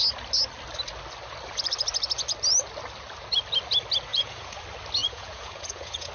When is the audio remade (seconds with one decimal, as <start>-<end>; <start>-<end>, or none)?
4.1-4.6; 5.0-6.1